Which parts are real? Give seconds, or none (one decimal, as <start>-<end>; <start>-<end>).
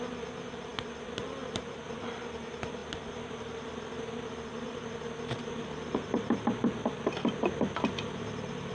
0.0-8.7